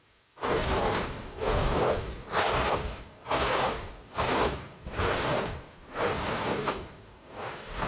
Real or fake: fake